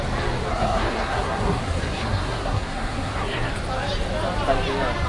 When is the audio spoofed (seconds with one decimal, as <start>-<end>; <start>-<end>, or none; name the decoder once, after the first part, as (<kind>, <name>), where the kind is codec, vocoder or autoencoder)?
0.5-3.5 (codec, SNAC)